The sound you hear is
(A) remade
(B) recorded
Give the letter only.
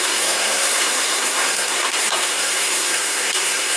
A